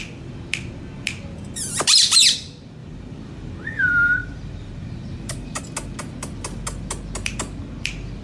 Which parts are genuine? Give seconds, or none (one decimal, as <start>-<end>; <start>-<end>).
0.0-2.8; 5.6-8.2